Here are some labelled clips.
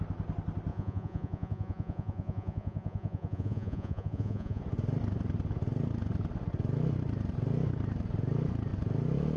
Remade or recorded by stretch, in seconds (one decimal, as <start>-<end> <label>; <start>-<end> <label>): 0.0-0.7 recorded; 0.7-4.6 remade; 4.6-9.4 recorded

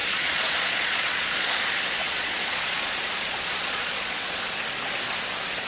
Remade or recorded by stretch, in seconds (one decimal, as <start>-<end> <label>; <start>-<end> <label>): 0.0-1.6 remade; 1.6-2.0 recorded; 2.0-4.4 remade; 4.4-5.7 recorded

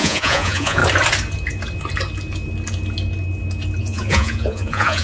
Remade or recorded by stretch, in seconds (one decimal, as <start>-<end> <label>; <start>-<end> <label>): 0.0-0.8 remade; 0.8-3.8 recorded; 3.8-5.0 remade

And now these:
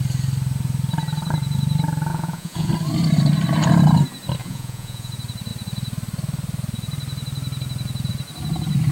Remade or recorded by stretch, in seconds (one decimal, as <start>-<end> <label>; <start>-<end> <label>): 0.0-2.1 recorded; 2.1-2.7 remade; 2.7-4.4 recorded; 4.4-5.1 remade; 5.1-8.9 recorded